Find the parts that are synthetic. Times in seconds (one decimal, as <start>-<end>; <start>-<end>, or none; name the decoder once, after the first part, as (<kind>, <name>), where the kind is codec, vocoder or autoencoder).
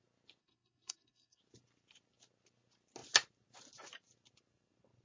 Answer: 0.4-1.4 (codec, SNAC)